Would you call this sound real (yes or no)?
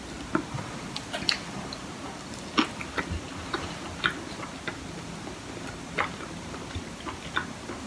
yes